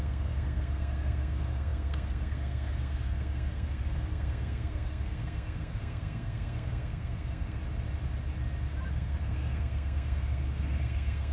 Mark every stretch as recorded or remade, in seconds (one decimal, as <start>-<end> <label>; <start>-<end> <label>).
0.0-7.6 remade; 7.6-8.9 recorded; 8.9-11.3 remade